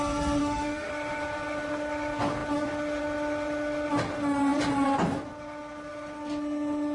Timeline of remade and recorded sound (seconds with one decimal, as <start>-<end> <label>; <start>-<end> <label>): 0.0-0.4 recorded; 0.4-0.9 remade; 0.9-6.9 recorded